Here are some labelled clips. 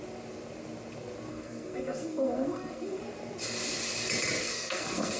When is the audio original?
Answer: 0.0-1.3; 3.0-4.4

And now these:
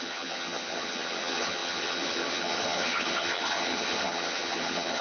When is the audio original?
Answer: none